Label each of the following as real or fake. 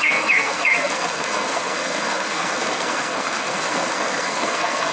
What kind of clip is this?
fake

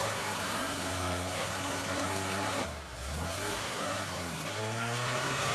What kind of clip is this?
fake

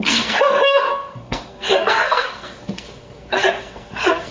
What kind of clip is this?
fake